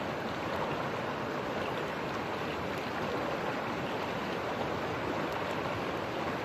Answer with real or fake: real